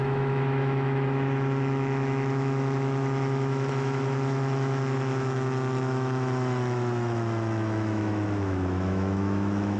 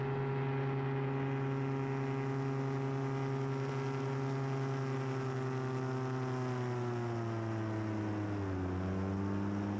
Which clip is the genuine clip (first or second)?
second